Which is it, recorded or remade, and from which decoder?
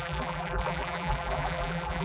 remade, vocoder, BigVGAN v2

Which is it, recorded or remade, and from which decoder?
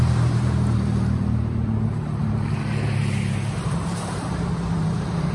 remade, vocoder, BigVGAN v2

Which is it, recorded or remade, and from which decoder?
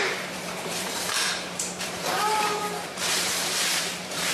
remade, vocoder, BigVGAN v2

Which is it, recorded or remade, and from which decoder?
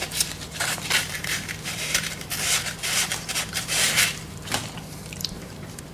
remade, vocoder, BigVGAN v2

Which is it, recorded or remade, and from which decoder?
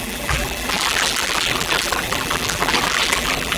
remade, vocoder, BigVGAN v2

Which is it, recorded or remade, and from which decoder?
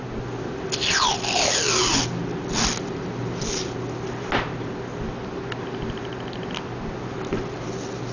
recorded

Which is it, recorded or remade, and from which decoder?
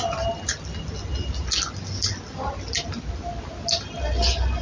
recorded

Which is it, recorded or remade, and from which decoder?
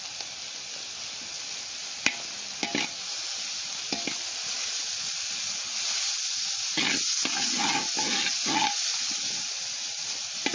recorded